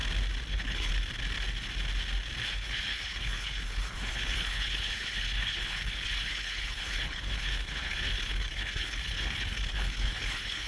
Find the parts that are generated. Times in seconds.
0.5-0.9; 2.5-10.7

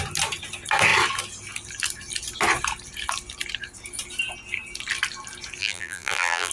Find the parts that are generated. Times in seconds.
5.6-6.5

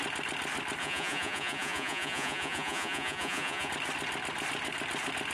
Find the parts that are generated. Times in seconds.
0.8-3.7

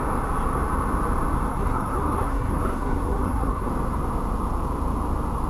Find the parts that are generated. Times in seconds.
1.5-3.7